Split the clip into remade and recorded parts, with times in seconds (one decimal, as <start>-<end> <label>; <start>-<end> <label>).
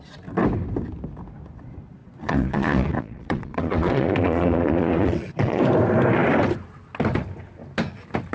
0.0-2.0 recorded; 2.0-5.6 remade; 5.6-8.3 recorded